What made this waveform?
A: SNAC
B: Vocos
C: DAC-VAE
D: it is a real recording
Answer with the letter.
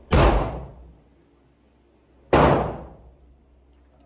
D